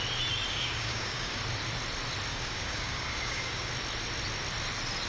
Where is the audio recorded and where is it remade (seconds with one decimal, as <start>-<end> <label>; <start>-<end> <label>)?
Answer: 0.0-0.5 recorded; 0.5-1.4 remade; 1.4-2.3 recorded; 2.3-3.7 remade; 3.7-5.1 recorded